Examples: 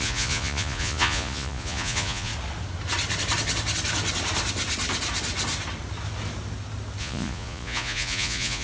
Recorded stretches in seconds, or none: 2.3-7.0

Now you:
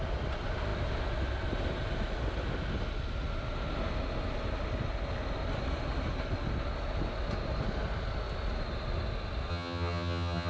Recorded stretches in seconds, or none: 0.0-9.5

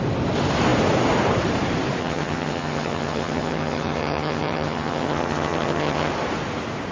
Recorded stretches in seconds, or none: 0.0-2.0; 6.1-6.9

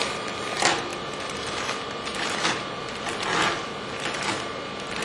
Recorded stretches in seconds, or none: 0.0-5.0

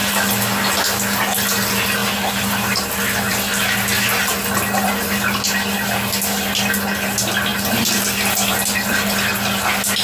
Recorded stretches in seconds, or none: 0.0-2.0; 3.3-10.0

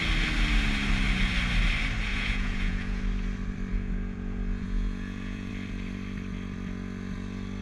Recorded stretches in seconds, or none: 0.0-2.1; 3.0-3.7; 5.5-7.6

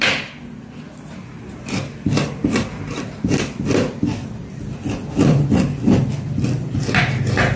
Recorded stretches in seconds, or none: 0.0-4.4; 6.8-7.6

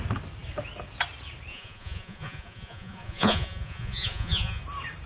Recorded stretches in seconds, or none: 0.0-1.5; 4.6-5.1